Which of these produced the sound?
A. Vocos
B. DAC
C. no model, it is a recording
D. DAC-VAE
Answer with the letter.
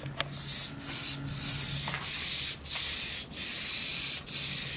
C